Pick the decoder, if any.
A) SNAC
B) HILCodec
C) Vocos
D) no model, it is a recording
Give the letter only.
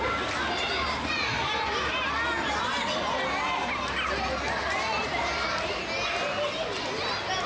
D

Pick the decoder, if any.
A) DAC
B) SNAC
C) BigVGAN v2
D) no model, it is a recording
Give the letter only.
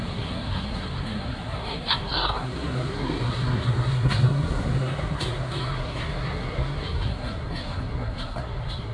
B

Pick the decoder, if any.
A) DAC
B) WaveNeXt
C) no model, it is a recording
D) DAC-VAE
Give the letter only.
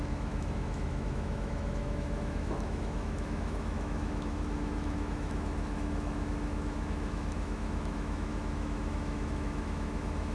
D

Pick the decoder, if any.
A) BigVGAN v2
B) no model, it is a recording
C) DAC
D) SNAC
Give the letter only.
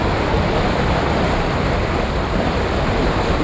B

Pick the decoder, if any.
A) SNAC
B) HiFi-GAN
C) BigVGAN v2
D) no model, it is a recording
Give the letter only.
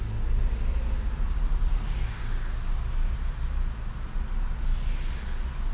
D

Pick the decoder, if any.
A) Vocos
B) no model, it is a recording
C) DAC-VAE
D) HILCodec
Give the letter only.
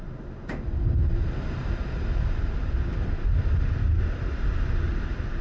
B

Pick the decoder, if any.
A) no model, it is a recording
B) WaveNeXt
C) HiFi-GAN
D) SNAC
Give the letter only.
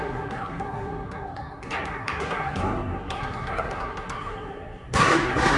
D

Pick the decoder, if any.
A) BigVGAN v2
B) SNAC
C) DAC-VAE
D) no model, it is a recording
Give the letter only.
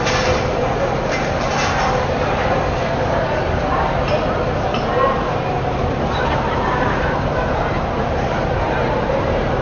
A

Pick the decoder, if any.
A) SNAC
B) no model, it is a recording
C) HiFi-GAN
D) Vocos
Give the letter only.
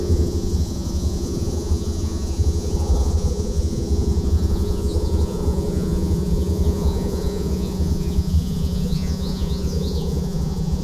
D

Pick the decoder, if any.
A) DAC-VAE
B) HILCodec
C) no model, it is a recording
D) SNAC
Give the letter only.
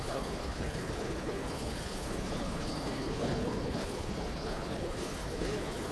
B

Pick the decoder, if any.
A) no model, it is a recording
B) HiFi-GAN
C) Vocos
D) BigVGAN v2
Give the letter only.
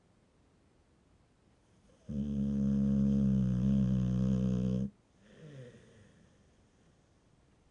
A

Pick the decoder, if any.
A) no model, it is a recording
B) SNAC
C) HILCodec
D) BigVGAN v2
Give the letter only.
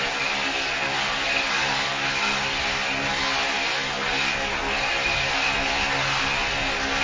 A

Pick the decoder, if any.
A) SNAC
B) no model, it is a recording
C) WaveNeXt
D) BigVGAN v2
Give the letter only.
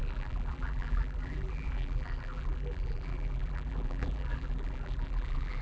D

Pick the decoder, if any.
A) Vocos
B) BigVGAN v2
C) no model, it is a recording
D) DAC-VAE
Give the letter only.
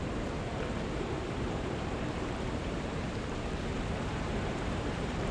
B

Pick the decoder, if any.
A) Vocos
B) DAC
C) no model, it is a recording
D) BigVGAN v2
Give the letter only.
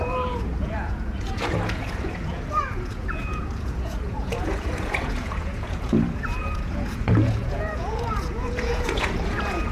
A